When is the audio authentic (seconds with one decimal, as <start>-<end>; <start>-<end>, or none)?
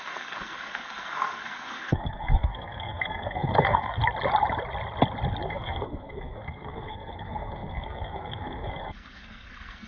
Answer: 4.0-5.5